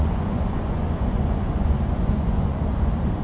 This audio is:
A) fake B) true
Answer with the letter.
A